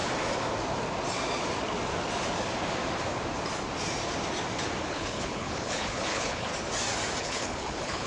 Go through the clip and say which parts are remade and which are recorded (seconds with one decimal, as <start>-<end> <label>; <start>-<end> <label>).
0.0-4.9 recorded; 4.9-6.5 remade; 6.5-7.2 recorded; 7.2-8.1 remade